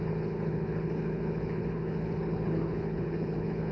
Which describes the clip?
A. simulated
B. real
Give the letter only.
A